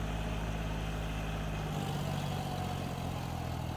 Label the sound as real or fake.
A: real